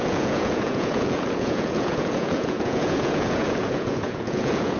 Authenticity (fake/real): fake